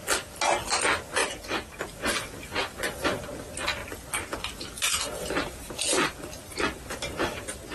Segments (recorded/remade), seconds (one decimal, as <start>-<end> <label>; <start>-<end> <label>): 0.0-7.7 recorded